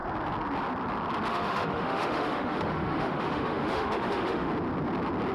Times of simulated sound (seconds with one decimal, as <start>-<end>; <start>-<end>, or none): 1.3-4.5